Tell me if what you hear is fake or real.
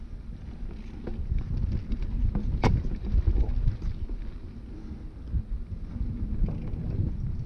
real